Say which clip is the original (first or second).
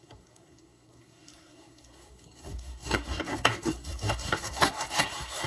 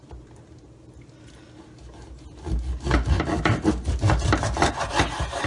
second